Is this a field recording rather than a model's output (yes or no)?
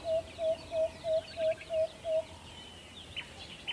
yes